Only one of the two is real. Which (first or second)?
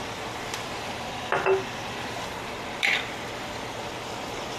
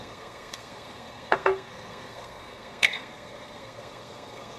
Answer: first